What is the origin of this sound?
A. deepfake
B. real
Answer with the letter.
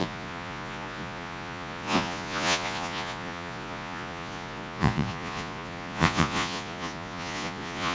A